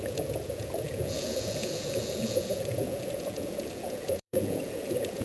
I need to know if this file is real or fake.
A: fake